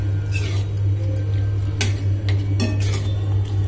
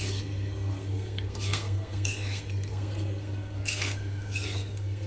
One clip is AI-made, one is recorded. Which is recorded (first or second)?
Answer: first